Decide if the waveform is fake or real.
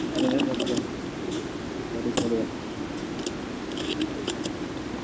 real